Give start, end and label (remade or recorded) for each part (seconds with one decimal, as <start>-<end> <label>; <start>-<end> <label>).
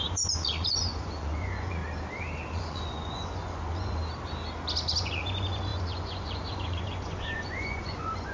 0.0-1.8 remade; 1.8-2.5 recorded; 2.5-4.0 remade; 4.0-5.0 recorded; 5.0-8.3 remade